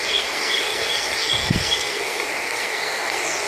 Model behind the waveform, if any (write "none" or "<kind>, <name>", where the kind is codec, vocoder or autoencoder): codec, SNAC